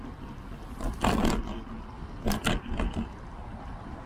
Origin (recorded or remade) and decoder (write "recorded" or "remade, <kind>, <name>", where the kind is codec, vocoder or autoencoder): recorded